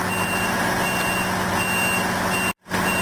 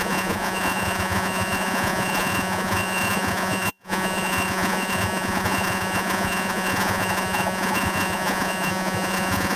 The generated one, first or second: second